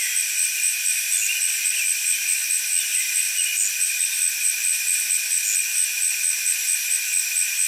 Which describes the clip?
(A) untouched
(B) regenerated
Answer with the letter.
A